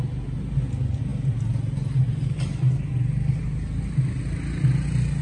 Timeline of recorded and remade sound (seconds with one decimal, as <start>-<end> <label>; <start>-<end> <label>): 0.0-5.2 recorded